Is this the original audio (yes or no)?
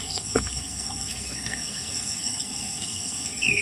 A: no